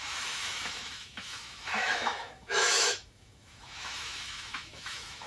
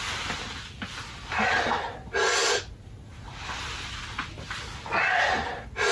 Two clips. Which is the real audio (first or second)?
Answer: second